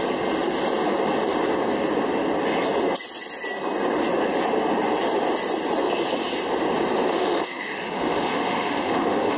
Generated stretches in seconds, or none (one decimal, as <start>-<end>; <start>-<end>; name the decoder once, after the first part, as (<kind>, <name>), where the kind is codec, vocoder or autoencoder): 7.1-9.4 (autoencoder, DAC-VAE)